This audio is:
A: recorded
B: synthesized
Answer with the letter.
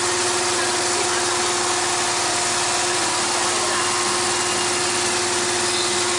A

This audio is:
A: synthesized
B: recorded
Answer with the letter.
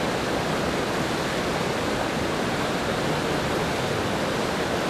B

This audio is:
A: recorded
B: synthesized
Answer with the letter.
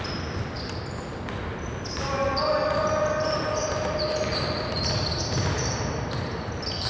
A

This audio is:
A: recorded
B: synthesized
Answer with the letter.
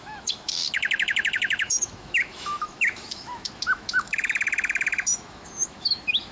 B